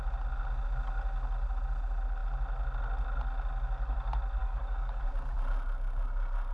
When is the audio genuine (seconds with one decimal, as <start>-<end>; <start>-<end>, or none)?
0.0-4.4; 5.0-6.5